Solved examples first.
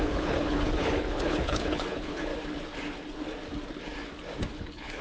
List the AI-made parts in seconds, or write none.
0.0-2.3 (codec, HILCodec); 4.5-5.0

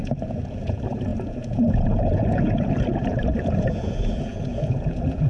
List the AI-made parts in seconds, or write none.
0.0-5.3 (vocoder, Vocos)

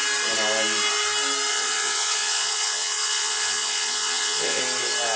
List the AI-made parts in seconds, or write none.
1.5-4.6 (vocoder, Vocos)

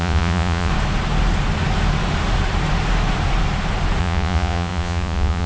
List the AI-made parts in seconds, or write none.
0.0-0.7 (vocoder, Vocos); 4.0-5.5

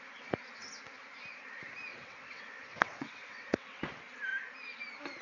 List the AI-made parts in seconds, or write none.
1.9-3.8 (vocoder, WaveNeXt)

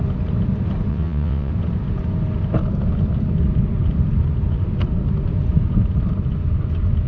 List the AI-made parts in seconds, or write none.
0.9-1.5 (vocoder, WaveNeXt)